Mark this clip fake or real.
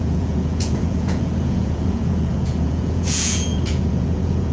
fake